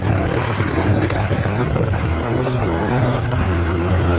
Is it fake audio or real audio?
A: fake